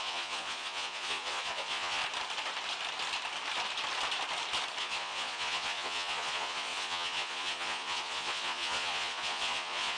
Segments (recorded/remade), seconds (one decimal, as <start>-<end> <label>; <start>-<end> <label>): 0.0-2.0 remade; 2.0-4.8 recorded; 4.8-10.0 remade

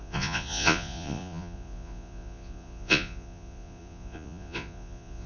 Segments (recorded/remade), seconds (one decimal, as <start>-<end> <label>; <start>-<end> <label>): 0.0-5.3 remade